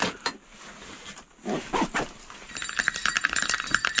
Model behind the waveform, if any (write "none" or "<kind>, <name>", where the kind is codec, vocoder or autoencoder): none